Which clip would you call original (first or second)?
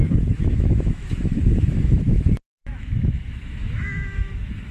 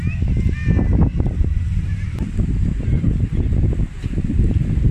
second